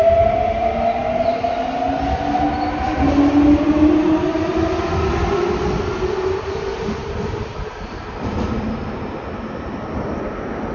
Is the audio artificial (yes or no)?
no